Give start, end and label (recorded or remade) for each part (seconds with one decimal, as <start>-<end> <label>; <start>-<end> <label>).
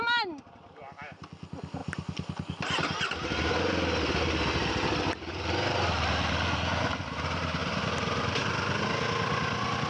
0.0-9.9 recorded